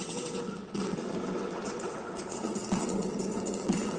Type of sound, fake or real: fake